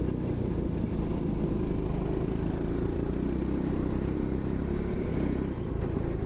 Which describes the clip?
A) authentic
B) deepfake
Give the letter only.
A